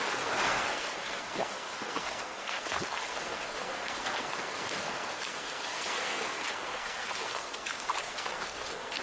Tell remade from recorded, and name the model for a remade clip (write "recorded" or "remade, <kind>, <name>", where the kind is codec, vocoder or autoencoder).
remade, codec, SNAC